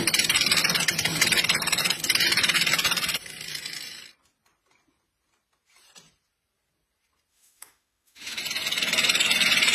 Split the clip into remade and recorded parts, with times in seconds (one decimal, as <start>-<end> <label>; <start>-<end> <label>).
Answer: 0.0-7.3 recorded; 7.3-8.4 remade; 8.4-9.7 recorded